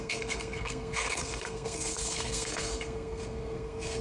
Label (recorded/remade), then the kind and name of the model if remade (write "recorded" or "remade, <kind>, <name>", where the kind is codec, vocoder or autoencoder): remade, codec, SNAC